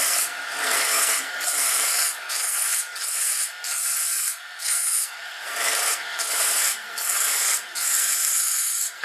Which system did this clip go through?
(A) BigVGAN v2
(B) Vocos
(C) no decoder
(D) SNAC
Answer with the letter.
D